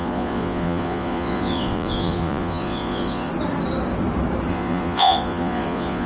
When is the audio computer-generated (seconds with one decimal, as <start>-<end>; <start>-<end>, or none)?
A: 0.0-3.3; 4.5-6.1